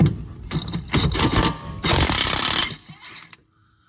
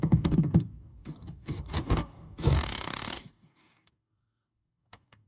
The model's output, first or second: second